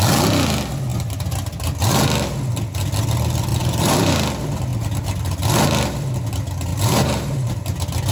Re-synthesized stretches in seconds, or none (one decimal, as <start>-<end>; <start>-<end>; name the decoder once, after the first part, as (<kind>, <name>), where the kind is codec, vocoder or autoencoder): 3.5-4.1 (vocoder, BigVGAN v2); 6.7-7.5